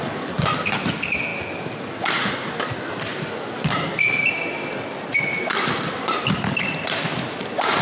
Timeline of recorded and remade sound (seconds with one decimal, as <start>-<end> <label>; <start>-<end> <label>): 0.0-7.8 recorded